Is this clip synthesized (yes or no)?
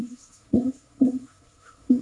yes